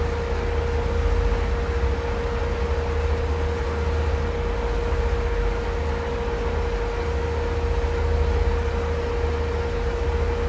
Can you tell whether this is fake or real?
real